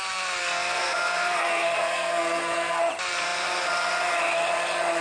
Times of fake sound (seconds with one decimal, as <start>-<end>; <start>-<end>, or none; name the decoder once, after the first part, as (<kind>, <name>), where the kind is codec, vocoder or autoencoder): 0.4-2.8 (codec, SNAC)